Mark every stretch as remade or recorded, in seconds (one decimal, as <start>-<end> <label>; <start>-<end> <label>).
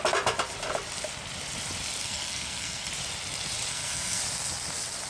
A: 0.0-2.0 recorded; 2.0-2.9 remade; 2.9-3.7 recorded; 3.7-4.2 remade; 4.2-5.1 recorded